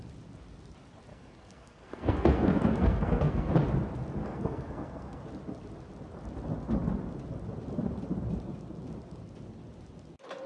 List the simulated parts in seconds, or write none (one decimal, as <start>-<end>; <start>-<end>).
1.1-3.5; 4.2-5.2